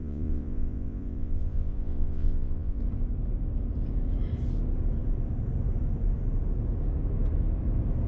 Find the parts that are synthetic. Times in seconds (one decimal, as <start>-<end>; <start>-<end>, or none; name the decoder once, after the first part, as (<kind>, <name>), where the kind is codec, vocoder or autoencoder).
0.0-2.8 (vocoder, Vocos)